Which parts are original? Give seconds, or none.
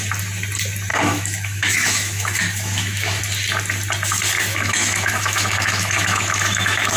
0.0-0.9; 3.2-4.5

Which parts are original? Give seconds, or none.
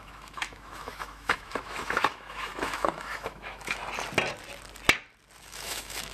3.8-5.4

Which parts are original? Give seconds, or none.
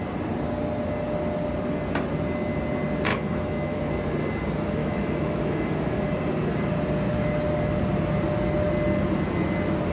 0.0-3.1; 3.9-4.8; 5.7-9.9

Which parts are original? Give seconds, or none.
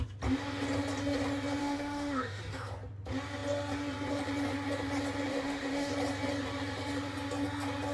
0.0-1.6; 2.4-5.3; 5.9-7.9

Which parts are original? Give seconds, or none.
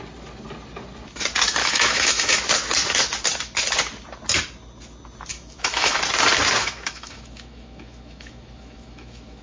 0.0-1.6; 2.4-5.3; 6.0-6.6